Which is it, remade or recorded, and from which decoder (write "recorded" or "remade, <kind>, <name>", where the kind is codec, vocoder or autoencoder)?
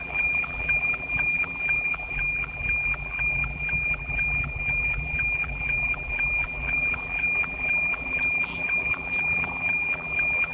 remade, vocoder, BigVGAN v2